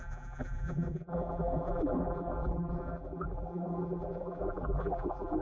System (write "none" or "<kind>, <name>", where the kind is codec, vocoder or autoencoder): vocoder, BigVGAN v2